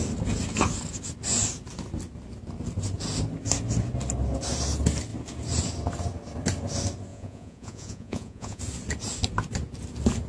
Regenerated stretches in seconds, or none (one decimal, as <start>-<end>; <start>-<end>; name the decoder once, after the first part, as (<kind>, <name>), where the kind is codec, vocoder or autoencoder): 7.1-8.6 (vocoder, Vocos)